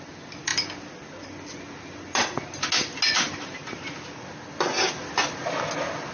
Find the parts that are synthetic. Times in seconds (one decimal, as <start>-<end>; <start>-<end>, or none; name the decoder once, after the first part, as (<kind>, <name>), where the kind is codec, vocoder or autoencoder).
none